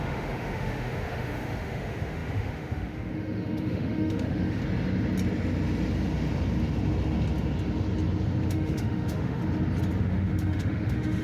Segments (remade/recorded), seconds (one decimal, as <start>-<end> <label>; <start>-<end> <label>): 0.0-4.6 remade; 4.6-8.5 recorded; 8.5-9.4 remade; 9.4-10.0 recorded; 10.0-11.2 remade